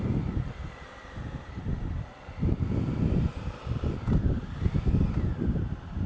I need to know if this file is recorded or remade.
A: remade